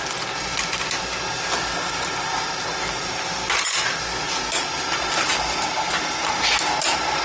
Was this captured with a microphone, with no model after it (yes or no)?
yes